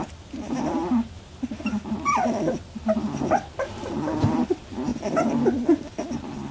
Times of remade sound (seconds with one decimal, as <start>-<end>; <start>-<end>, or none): none